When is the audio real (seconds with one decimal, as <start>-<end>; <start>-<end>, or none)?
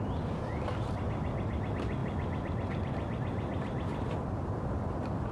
0.0-5.3